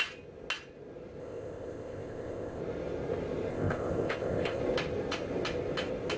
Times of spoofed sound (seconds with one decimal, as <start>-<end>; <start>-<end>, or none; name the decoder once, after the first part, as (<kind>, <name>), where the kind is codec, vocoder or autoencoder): 1.2-2.6 (codec, ZipCodec); 3.5-4.6